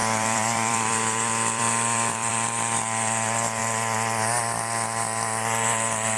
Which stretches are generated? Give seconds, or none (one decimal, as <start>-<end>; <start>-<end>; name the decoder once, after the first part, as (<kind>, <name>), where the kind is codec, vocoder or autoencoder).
0.0-2.3 (vocoder, BigVGAN v2)